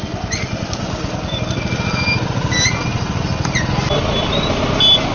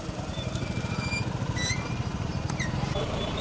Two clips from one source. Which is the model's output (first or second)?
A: second